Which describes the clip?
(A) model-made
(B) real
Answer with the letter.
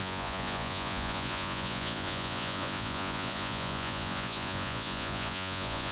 A